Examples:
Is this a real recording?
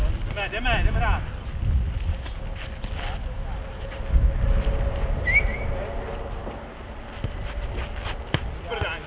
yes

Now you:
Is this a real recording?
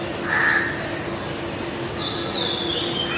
yes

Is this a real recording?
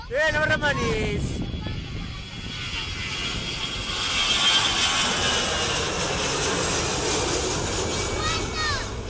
yes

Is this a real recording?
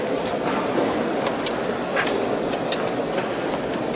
yes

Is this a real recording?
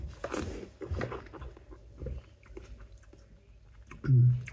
yes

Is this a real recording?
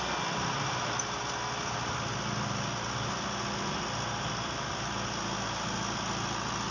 yes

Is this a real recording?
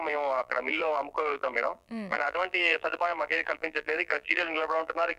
no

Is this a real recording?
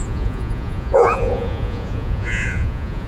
no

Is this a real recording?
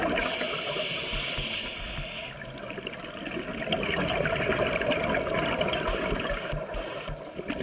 yes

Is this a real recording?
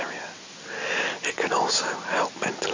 yes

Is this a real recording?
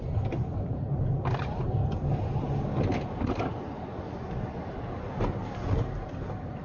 no